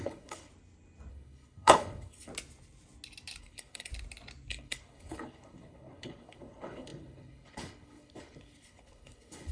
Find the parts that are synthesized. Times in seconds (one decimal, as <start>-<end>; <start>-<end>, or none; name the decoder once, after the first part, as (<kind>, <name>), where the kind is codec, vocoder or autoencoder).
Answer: 0.0-0.5 (codec, HILCodec); 1.1-2.3; 3.4-3.9; 4.5-9.5